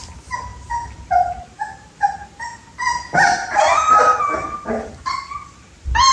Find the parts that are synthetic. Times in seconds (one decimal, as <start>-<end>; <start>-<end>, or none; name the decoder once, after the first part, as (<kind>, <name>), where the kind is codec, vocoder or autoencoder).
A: none